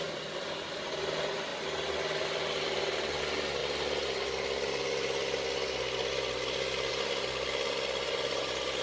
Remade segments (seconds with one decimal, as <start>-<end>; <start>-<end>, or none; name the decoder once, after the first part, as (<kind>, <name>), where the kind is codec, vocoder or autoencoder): none